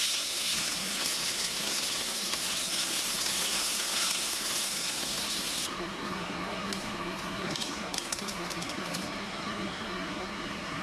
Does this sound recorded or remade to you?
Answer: remade